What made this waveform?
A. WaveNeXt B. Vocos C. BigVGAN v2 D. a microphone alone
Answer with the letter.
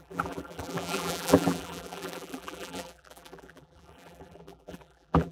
C